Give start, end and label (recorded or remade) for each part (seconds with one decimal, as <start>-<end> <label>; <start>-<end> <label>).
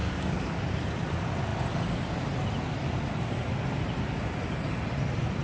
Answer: 0.0-0.6 remade; 0.6-5.4 recorded